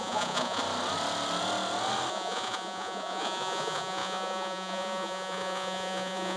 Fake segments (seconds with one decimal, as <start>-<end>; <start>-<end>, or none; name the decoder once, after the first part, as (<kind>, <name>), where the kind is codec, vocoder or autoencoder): 0.0-0.6 (vocoder, Vocos); 2.1-6.4